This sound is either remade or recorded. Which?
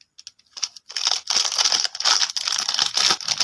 recorded